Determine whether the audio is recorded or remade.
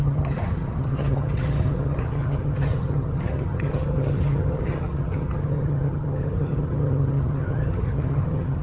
remade